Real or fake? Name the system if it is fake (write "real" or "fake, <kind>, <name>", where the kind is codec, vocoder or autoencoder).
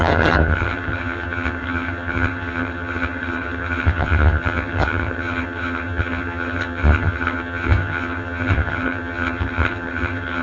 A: fake, vocoder, HiFi-GAN